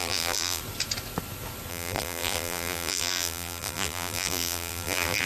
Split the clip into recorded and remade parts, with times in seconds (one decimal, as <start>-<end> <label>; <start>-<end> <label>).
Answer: 0.0-0.6 remade; 0.6-1.7 recorded; 1.7-5.3 remade